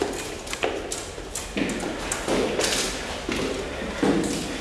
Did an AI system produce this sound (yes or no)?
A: no